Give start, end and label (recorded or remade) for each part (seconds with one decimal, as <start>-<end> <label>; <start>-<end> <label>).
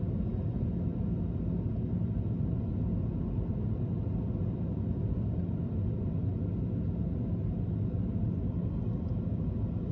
0.0-9.9 recorded